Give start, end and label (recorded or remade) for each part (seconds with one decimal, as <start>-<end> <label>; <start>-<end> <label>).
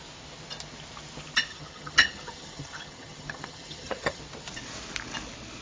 0.0-1.5 recorded; 1.5-4.2 remade; 4.2-5.6 recorded